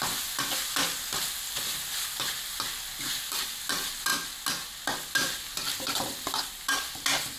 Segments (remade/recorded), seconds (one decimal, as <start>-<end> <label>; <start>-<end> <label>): 0.0-7.4 recorded